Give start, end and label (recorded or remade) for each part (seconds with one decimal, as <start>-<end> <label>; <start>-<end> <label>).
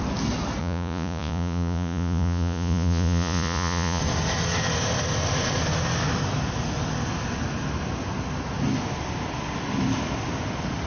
0.0-0.6 recorded; 0.6-4.0 remade; 4.0-10.9 recorded